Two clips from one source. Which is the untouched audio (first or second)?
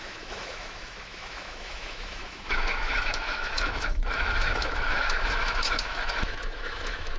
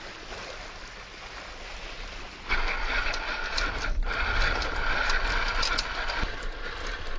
second